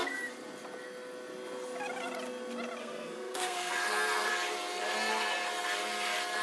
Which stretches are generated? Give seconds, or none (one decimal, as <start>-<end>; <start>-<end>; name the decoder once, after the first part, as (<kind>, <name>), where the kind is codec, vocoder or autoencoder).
2.8-3.7 (codec, SNAC)